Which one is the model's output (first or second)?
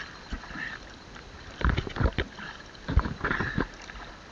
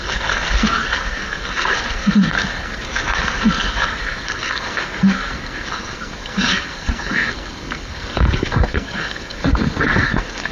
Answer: second